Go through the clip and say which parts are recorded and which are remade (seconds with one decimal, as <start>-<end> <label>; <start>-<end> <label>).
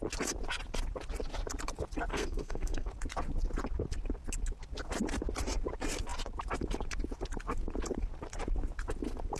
0.0-2.1 recorded; 2.1-2.9 remade; 2.9-9.4 recorded